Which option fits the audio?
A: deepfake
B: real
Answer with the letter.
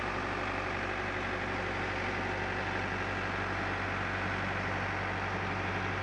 B